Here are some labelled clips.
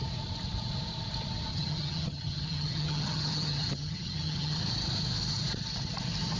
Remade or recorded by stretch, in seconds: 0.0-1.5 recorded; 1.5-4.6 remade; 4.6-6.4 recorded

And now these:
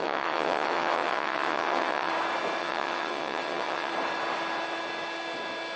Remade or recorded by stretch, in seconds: 0.0-2.1 remade; 2.1-2.6 recorded; 2.6-3.9 remade; 3.9-5.8 recorded

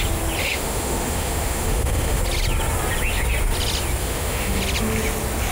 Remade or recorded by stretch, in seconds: 0.0-0.4 recorded; 0.4-2.2 remade; 2.2-4.0 recorded; 4.0-4.6 remade; 4.6-5.5 recorded